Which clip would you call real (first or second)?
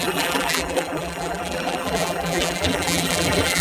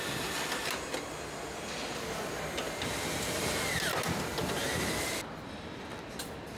second